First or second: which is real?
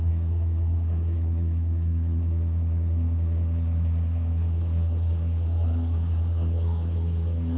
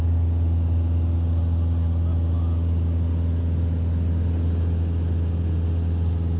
second